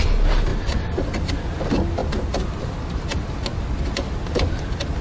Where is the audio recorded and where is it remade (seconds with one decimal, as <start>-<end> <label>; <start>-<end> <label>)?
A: 0.0-5.0 recorded